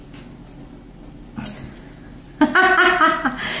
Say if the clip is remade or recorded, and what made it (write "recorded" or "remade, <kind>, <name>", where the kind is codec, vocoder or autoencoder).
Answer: recorded